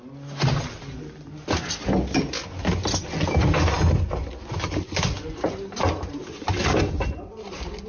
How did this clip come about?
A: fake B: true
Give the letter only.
B